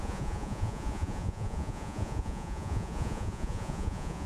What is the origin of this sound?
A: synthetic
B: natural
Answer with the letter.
A